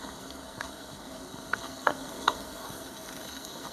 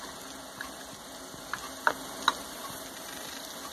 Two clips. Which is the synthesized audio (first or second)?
first